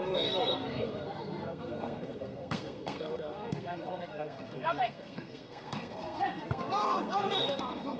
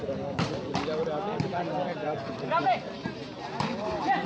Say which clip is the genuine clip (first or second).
second